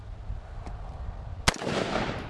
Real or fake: real